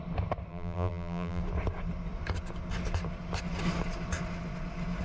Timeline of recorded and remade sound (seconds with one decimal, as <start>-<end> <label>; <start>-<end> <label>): 0.0-0.5 recorded; 0.5-1.4 remade; 1.4-5.0 recorded